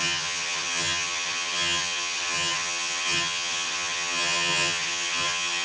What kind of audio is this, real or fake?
fake